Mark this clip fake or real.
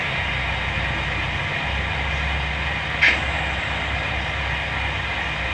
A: real